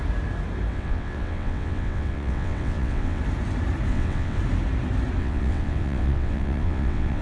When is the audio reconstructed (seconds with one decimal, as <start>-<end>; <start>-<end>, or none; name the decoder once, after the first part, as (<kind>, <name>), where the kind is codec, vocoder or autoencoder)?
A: 0.7-3.2 (vocoder, WaveNeXt); 3.9-4.4; 5.2-7.2